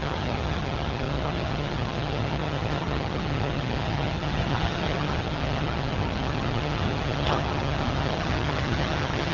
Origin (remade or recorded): remade